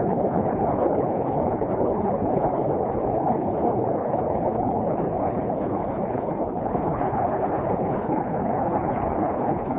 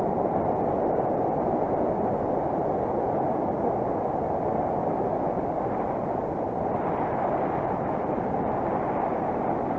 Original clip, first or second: second